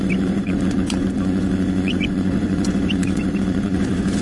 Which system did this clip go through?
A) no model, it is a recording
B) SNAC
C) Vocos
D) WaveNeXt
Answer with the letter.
C